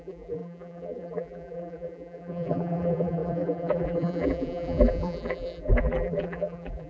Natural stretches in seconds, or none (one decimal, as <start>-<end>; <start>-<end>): none